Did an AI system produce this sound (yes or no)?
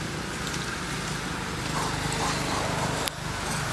no